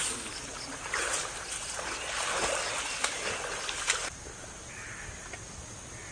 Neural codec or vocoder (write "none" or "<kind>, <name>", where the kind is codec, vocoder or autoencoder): none